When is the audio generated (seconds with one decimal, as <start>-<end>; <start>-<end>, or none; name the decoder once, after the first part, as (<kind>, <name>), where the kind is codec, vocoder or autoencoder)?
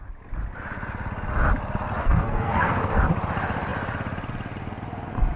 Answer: 2.0-3.0 (codec, SNAC)